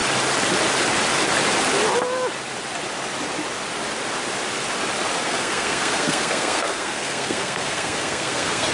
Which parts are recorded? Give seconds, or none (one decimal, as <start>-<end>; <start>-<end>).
0.0-5.2